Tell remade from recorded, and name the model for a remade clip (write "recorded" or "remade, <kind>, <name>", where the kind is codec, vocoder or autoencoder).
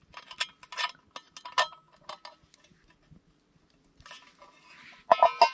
recorded